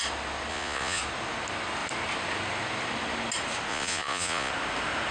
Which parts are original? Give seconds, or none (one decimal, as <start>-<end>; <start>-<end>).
0.0-0.5; 1.0-3.7; 4.5-5.1